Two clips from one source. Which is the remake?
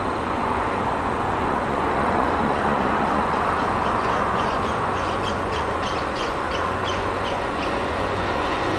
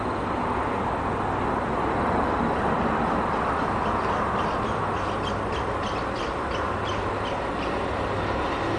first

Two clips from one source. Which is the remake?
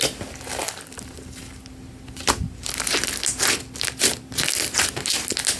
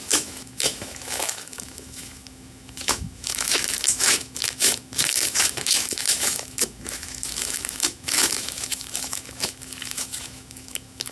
second